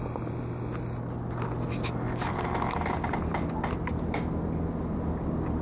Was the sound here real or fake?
real